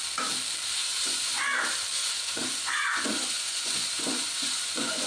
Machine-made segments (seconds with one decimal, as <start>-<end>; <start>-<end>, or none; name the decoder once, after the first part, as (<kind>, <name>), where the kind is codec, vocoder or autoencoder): 0.8-1.4 (vocoder, Vocos); 2.0-5.1